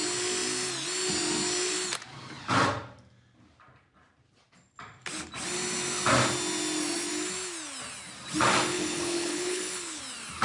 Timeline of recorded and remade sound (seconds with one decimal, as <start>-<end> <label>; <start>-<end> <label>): 0.0-8.7 recorded; 8.7-10.0 remade; 10.0-10.4 recorded